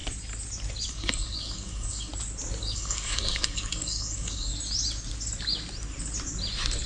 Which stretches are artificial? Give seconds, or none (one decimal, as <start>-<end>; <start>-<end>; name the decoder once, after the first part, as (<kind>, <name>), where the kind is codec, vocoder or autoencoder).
0.9-2.1 (codec, DAC); 2.6-4.5